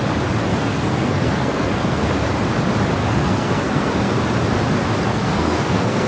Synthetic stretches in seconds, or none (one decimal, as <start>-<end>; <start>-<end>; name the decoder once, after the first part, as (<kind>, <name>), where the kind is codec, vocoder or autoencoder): 0.5-2.3 (codec, SNAC); 3.0-4.2; 5.1-6.1

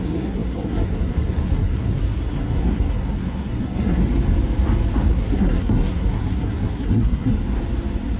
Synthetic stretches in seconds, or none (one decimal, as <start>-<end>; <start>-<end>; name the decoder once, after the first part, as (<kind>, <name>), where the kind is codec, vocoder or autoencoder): 0.0-4.0 (codec, SNAC); 5.1-7.3